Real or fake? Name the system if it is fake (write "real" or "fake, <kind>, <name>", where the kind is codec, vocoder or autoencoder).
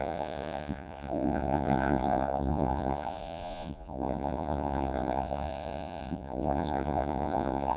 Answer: fake, vocoder, Vocos